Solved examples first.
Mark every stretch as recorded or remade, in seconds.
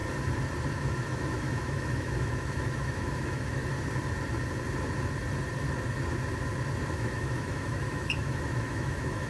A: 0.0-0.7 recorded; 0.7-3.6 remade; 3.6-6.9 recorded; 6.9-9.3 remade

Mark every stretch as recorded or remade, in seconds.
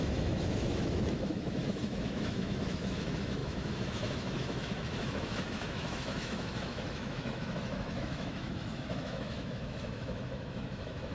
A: 0.0-11.1 remade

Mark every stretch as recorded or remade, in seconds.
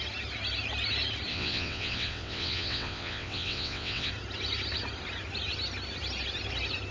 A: 0.0-1.3 recorded; 1.3-4.1 remade; 4.1-6.9 recorded